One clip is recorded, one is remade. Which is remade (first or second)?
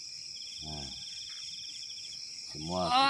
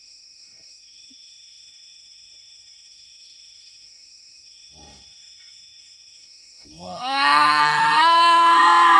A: second